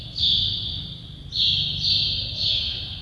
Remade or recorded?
recorded